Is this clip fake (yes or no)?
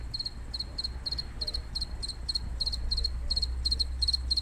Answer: no